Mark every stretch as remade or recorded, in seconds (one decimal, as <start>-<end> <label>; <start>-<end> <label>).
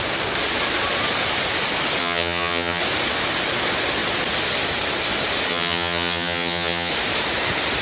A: 0.0-2.0 recorded; 2.0-2.8 remade; 2.8-5.5 recorded; 5.5-6.9 remade; 6.9-7.8 recorded